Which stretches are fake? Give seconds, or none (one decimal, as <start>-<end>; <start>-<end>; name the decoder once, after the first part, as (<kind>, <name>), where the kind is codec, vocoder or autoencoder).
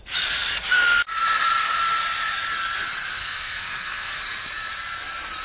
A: 3.2-4.2 (codec, SNAC)